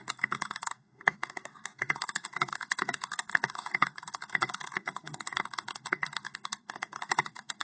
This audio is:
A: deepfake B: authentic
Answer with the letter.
A